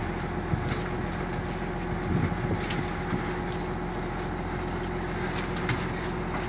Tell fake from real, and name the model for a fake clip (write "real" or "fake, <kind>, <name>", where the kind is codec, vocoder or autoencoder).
real